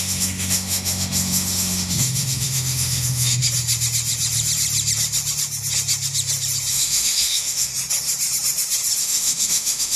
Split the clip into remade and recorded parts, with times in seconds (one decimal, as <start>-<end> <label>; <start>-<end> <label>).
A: 0.0-3.4 remade; 3.4-6.7 recorded; 6.7-7.7 remade; 7.7-9.0 recorded; 9.0-10.0 remade